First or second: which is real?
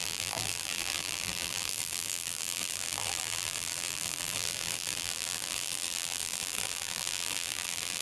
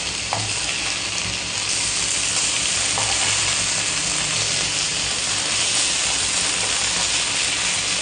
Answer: second